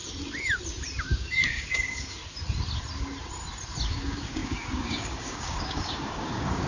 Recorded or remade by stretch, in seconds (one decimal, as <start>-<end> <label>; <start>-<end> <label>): 0.0-1.0 recorded; 1.0-2.2 remade; 2.2-3.9 recorded; 3.9-6.7 remade